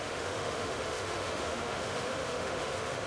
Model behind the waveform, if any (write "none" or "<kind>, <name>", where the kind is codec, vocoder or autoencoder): autoencoder, DAC-VAE